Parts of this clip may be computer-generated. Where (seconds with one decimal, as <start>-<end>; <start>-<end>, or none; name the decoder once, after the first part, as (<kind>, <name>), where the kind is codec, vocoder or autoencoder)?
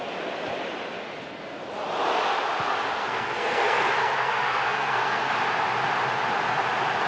3.0-5.3 (codec, SNAC)